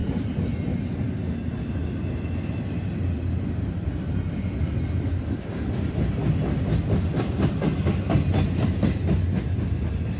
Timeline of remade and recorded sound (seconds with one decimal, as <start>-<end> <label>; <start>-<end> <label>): 0.0-10.2 recorded